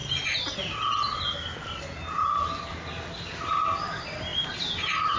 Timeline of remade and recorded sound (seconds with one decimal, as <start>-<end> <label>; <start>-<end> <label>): 0.0-5.2 recorded